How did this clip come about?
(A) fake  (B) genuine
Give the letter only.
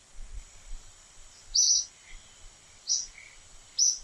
B